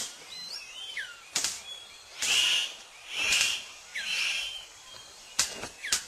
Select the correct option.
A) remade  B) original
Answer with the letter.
A